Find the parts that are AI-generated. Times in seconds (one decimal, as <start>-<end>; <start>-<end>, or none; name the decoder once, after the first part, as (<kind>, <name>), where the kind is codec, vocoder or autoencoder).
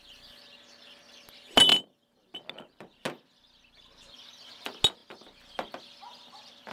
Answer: none